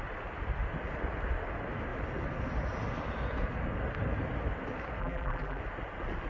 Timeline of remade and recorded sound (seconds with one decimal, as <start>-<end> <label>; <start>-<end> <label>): 0.0-5.0 recorded; 5.0-5.6 remade; 5.6-6.3 recorded